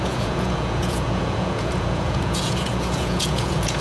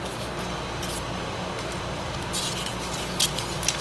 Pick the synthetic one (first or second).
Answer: first